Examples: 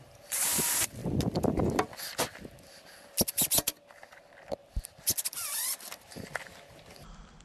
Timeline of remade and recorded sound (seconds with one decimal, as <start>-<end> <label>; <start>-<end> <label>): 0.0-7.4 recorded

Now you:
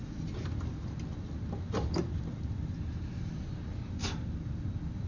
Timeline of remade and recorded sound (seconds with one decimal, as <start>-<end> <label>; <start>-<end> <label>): 0.0-5.1 recorded

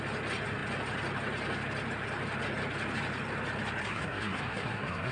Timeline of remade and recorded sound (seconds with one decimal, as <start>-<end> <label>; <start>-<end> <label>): 0.0-3.8 recorded; 3.8-5.1 remade